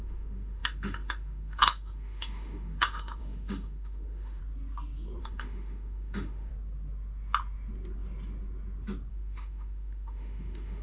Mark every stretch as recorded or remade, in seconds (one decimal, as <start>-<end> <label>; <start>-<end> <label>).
0.0-4.4 remade; 4.4-5.2 recorded; 5.2-6.5 remade; 6.5-9.1 recorded; 9.1-10.8 remade